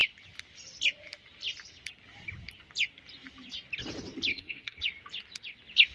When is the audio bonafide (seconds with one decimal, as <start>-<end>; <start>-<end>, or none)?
0.0-4.3; 4.8-5.9